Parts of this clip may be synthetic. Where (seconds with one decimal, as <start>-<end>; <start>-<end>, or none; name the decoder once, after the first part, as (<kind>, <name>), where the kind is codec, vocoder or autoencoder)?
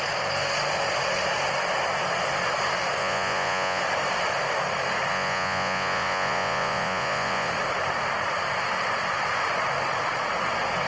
3.0-3.8 (vocoder, Vocos); 5.1-7.5